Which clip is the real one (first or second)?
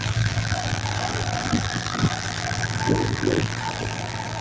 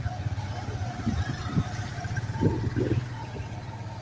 second